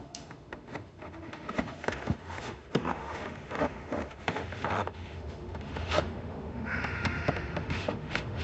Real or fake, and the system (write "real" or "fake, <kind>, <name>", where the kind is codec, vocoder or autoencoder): fake, autoencoder, DAC-VAE